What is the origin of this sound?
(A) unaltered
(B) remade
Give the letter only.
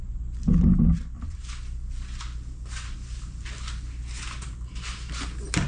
A